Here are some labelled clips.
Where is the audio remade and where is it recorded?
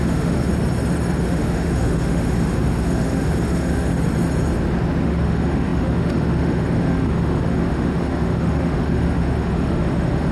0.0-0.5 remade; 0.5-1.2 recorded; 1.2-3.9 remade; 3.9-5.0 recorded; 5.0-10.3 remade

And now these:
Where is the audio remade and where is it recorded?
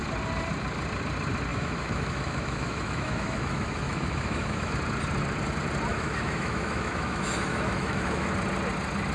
0.0-1.5 recorded; 1.5-4.7 remade; 4.7-5.9 recorded; 5.9-8.3 remade; 8.3-9.1 recorded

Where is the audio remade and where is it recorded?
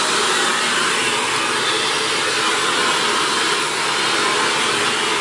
0.0-5.2 recorded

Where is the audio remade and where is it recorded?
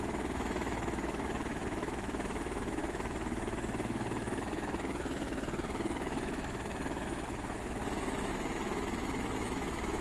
0.0-10.0 remade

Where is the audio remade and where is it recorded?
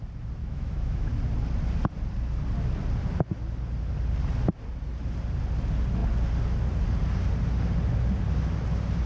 0.0-0.4 recorded; 0.4-1.1 remade; 1.1-9.1 recorded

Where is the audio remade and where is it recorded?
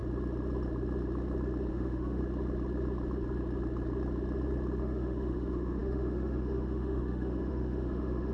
0.0-1.7 recorded; 1.7-2.2 remade; 2.2-4.8 recorded; 4.8-8.3 remade